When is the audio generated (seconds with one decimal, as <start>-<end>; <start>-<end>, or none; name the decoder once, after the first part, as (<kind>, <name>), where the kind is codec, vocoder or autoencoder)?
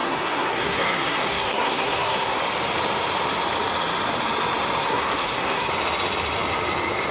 0.0-2.4 (codec, SNAC); 4.8-5.7